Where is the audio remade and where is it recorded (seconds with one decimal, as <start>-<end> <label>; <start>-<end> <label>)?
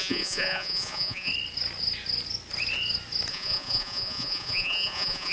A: 0.0-1.3 remade; 1.3-3.3 recorded; 3.3-5.3 remade